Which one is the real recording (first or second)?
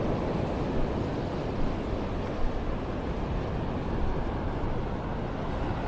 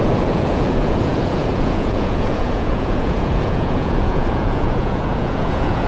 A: first